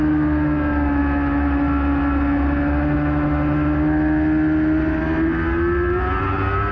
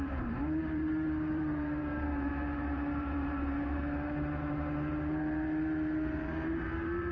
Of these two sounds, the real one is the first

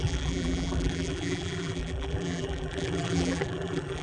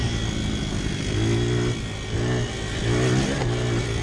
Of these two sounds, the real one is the second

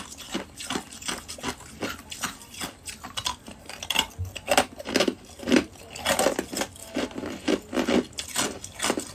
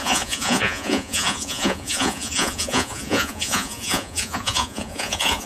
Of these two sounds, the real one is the first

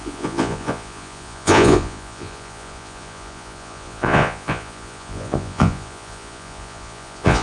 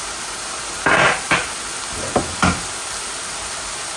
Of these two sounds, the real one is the second